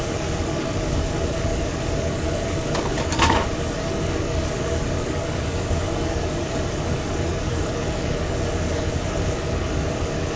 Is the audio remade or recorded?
remade